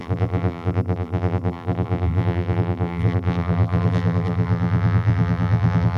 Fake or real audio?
fake